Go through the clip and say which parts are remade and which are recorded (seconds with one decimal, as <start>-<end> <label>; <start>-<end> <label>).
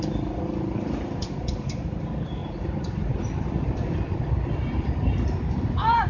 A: 0.0-6.1 remade